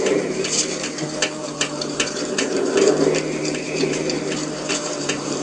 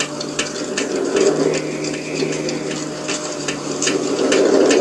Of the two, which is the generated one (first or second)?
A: first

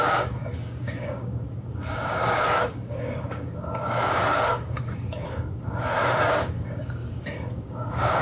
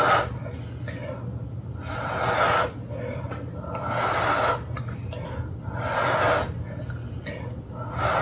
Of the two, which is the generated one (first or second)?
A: first